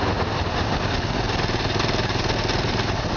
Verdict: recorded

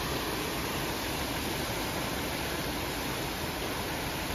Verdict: recorded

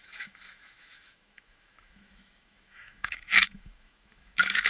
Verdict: remade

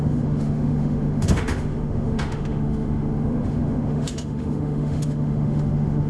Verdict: remade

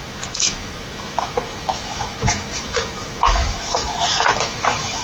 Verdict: remade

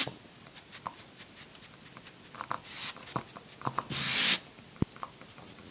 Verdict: recorded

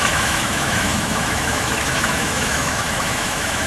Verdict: remade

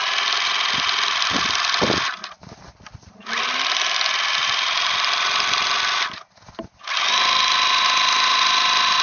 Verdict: recorded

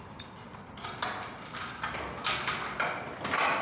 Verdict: recorded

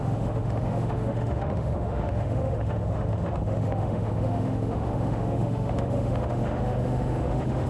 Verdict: remade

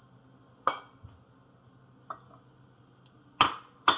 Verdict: recorded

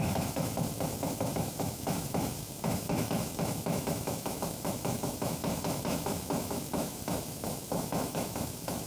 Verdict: remade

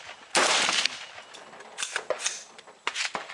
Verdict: recorded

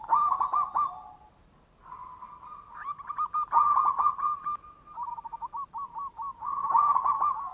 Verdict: recorded